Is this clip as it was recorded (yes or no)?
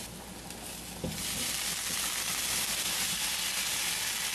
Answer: yes